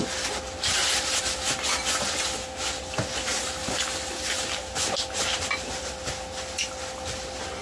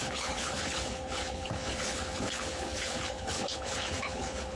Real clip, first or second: first